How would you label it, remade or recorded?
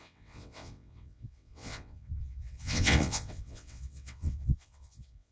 remade